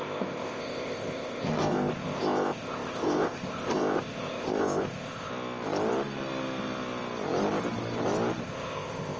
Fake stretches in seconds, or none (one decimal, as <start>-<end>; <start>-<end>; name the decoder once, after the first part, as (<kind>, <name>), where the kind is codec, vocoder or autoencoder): 0.0-5.3 (codec, ZipCodec); 8.4-9.2